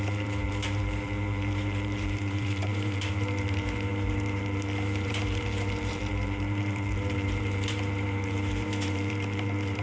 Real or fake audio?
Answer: fake